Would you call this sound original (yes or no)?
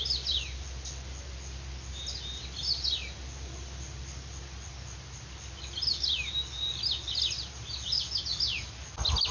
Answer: yes